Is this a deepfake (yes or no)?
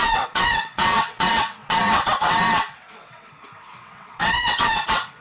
yes